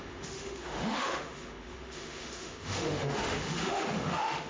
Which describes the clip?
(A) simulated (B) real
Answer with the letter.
A